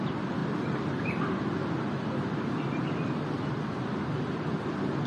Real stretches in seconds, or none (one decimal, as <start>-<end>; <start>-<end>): 0.0-5.1